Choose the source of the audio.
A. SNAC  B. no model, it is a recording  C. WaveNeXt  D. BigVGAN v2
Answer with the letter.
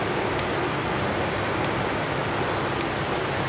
B